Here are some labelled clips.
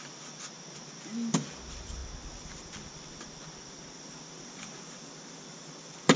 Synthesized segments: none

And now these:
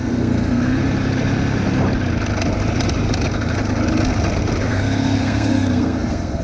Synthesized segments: 0.0-0.8 (codec, SNAC); 4.6-6.4

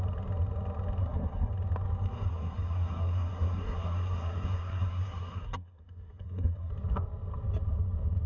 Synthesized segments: 1.0-1.5 (codec, SNAC); 2.3-6.7

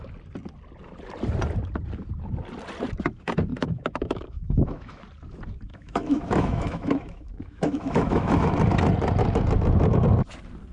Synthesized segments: 3.5-5.0 (autoencoder, DAC-VAE); 5.7-8.5

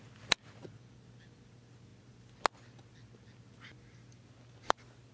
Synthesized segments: none

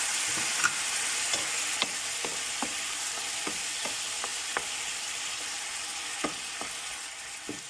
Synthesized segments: 2.3-2.8 (vocoder, BigVGAN v2); 4.3-5.2

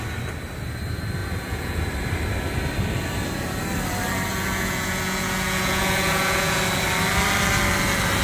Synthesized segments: 1.2-1.8 (vocoder, Vocos); 4.3-6.6

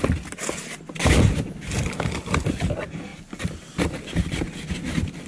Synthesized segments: none